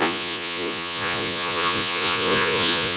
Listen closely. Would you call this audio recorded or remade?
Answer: remade